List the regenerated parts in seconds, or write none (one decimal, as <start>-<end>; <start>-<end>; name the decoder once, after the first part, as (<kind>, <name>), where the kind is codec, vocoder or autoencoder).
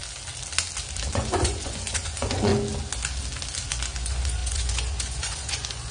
1.1-2.5 (vocoder, Vocos); 3.7-5.9